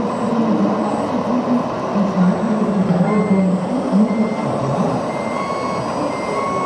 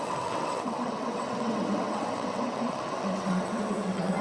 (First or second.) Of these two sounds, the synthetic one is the second